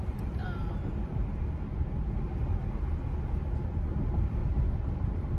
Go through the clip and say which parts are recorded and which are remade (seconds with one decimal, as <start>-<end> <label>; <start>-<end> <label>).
0.0-2.2 remade; 2.2-4.4 recorded; 4.4-5.4 remade